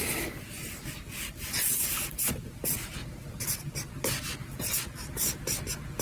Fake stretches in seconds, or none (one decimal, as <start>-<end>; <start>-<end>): 0.0-3.0; 3.7-6.0